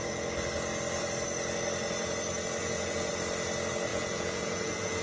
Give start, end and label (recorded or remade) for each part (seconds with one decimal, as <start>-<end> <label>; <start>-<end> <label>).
0.0-2.6 recorded; 2.6-3.1 remade; 3.1-3.9 recorded; 3.9-5.0 remade